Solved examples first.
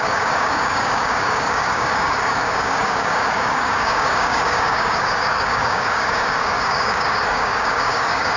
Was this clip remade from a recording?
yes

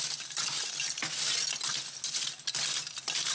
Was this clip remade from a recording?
no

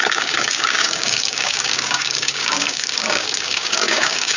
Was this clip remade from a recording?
yes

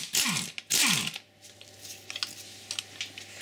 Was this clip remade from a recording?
no